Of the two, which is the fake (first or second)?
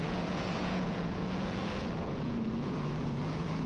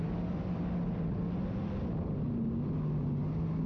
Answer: first